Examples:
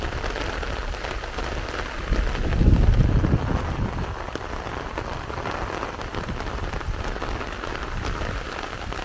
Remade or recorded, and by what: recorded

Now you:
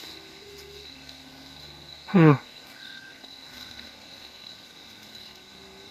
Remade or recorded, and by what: remade, codec, SNAC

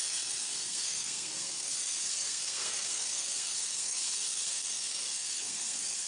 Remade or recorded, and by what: remade, codec, SNAC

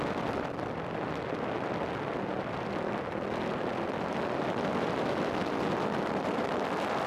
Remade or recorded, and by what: recorded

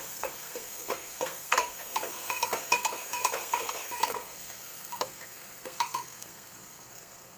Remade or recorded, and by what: remade, codec, SNAC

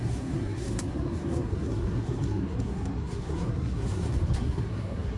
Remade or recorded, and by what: remade, codec, SNAC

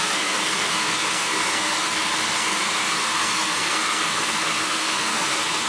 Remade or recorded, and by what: remade, codec, SNAC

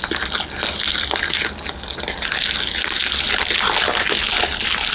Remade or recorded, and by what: recorded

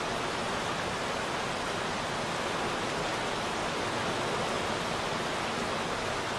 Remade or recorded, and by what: recorded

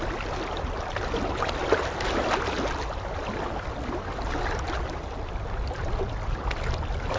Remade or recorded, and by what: recorded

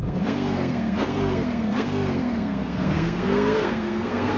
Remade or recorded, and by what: remade, codec, SNAC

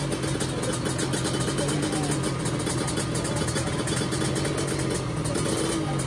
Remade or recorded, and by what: recorded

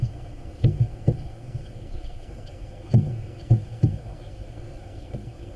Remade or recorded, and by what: remade, codec, SNAC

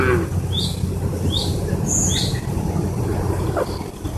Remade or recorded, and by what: recorded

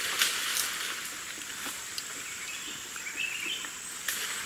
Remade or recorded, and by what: recorded